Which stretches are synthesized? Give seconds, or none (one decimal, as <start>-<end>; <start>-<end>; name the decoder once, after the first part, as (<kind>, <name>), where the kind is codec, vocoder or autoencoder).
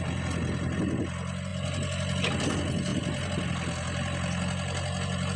none